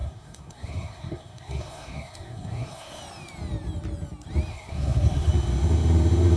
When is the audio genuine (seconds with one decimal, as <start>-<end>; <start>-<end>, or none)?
3.0-4.5; 5.3-6.4

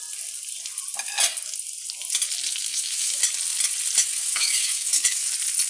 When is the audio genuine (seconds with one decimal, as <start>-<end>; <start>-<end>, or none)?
0.0-2.7; 3.2-4.0; 5.3-5.7